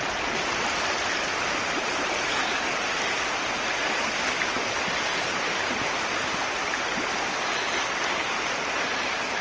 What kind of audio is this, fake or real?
real